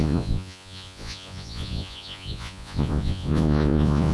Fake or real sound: fake